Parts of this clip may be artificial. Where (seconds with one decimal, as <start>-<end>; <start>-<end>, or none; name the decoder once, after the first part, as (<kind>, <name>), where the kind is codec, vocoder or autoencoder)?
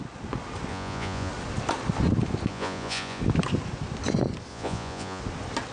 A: 0.7-1.3 (vocoder, Vocos); 2.5-3.2; 4.5-5.2